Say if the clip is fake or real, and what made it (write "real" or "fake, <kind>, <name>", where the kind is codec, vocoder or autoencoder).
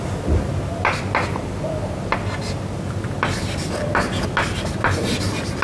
real